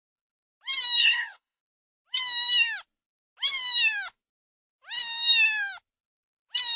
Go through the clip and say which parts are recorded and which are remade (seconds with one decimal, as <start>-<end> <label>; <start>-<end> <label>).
0.0-1.0 recorded; 1.0-1.6 remade; 1.6-6.8 recorded